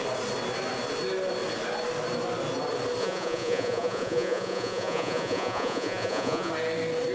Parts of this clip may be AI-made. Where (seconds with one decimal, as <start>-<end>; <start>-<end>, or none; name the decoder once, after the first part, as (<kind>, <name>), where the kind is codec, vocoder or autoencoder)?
3.0-6.5 (vocoder, Vocos)